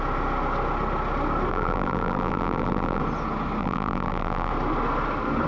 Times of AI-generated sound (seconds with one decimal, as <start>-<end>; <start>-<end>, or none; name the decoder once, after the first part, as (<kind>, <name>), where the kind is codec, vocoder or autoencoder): 1.5-3.0 (vocoder, BigVGAN v2); 3.6-4.5

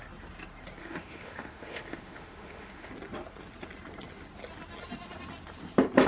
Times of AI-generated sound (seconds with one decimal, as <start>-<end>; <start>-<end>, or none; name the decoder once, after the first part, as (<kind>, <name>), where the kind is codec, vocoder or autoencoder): 0.8-2.9 (autoencoder, DAC-VAE)

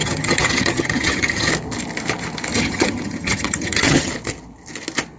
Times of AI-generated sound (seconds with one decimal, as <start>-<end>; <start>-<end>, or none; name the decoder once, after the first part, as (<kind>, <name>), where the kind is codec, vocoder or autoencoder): 0.0-1.5 (vocoder, HiFi-GAN); 2.5-4.1

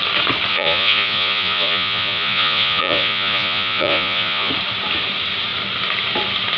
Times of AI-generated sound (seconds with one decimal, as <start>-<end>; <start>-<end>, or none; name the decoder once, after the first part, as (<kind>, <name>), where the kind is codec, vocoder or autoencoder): 0.5-4.5 (vocoder, Vocos)

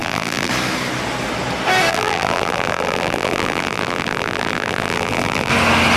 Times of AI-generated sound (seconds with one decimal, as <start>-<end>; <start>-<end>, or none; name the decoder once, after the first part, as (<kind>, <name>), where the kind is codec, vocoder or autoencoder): 0.0-0.5 (vocoder, BigVGAN v2); 1.9-5.5

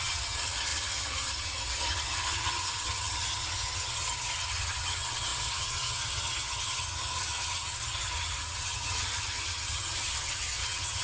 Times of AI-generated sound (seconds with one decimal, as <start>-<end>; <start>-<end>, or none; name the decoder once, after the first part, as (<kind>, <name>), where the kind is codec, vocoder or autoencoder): 0.0-11.0 (vocoder, HiFi-GAN)

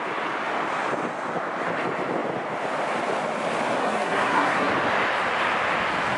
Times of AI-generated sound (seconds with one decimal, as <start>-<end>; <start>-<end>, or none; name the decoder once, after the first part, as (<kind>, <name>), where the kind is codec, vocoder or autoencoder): 3.8-4.7 (codec, SNAC)

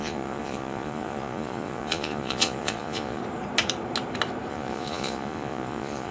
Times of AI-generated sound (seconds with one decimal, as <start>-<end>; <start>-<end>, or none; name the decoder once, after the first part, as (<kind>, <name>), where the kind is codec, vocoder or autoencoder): 0.0-3.2 (vocoder, Vocos); 4.5-6.1